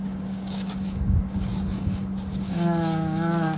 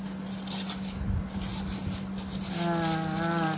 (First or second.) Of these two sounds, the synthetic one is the first